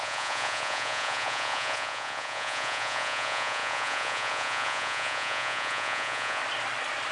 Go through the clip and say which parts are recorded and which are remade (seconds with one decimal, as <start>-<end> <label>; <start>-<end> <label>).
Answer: 0.0-6.4 remade; 6.4-7.1 recorded